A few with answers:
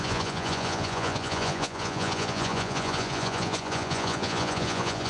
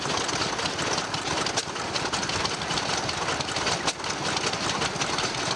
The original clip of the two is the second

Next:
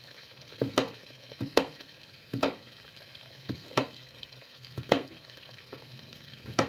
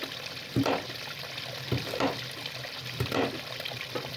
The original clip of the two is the second